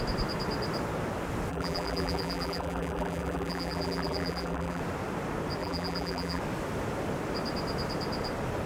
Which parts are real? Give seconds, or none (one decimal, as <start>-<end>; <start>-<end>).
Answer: 0.0-1.5; 4.8-5.6; 6.4-8.7